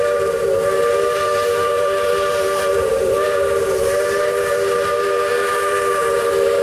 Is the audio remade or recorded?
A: remade